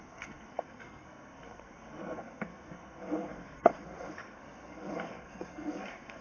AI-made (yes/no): yes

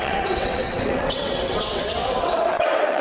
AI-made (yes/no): yes